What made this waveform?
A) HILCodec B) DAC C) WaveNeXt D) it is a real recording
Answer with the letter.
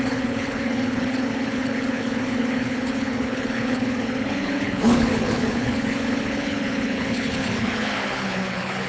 A